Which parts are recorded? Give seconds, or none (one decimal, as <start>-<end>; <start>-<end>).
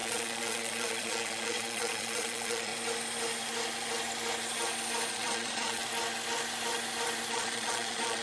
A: 2.7-5.1; 5.8-7.3